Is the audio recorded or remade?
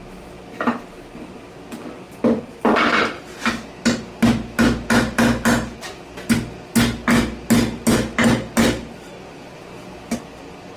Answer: recorded